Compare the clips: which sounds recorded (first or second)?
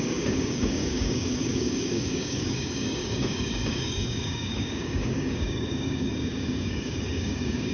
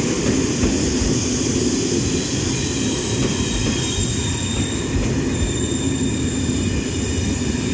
second